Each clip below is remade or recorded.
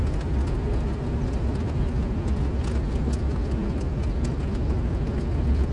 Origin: recorded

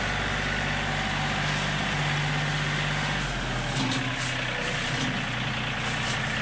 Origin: recorded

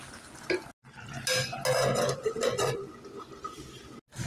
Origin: recorded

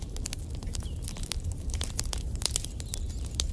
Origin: remade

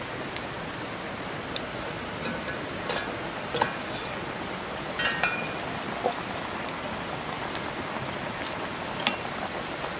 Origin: recorded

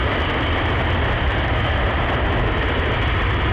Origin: recorded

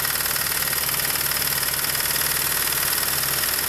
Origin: recorded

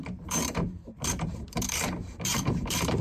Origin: remade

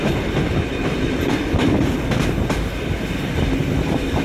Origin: recorded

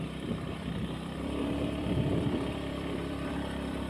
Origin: remade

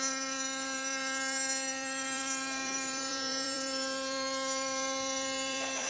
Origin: remade